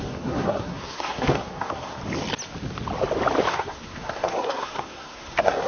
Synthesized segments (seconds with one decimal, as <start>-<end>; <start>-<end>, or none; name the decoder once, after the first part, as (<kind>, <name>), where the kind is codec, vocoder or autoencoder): 0.0-2.0 (codec, SNAC); 3.5-5.7